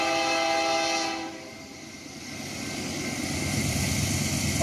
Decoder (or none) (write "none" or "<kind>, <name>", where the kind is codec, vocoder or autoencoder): none